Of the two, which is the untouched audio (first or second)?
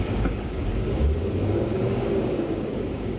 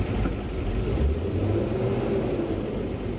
second